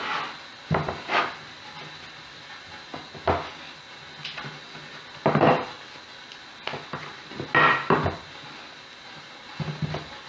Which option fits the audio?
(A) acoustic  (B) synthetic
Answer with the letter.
A